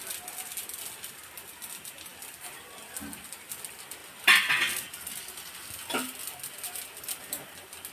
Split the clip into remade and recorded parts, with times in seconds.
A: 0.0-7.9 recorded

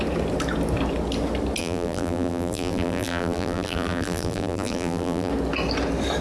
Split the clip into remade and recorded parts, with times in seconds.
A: 0.0-1.6 recorded; 1.6-5.3 remade; 5.3-6.2 recorded

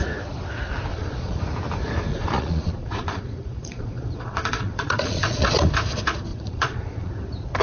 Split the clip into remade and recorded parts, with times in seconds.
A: 0.0-0.9 recorded; 0.9-1.4 remade; 1.4-2.1 recorded; 2.1-5.7 remade; 5.7-6.3 recorded; 6.3-7.1 remade; 7.1-7.6 recorded

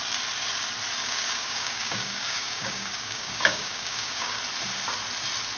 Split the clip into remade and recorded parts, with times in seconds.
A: 0.0-1.0 recorded; 1.0-4.4 remade; 4.4-5.6 recorded

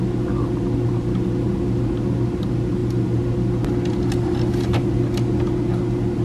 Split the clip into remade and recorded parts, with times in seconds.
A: 0.0-6.2 recorded

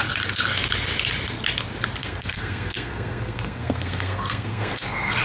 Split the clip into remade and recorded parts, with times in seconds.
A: 0.0-2.0 recorded; 2.0-5.2 remade

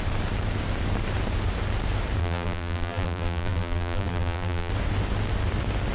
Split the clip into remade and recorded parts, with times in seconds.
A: 0.0-2.2 recorded; 2.2-4.7 remade; 4.7-5.9 recorded